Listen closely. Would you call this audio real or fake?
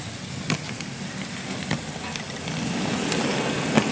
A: real